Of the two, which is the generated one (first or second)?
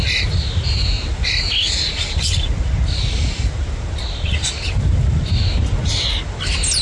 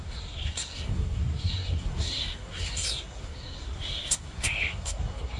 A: second